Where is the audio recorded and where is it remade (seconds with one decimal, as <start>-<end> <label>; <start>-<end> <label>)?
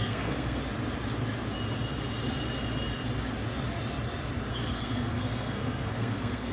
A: 0.0-0.6 remade; 0.6-4.5 recorded; 4.5-6.5 remade